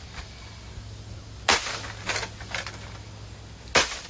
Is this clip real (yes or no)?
yes